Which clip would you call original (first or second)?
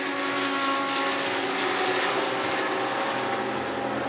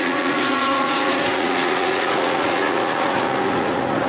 first